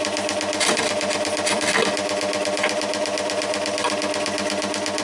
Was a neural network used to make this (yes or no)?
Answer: no